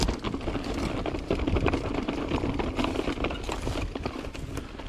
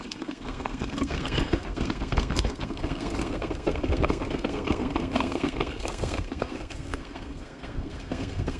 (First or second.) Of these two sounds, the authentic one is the first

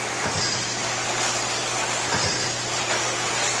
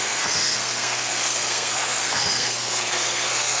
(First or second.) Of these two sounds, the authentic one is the first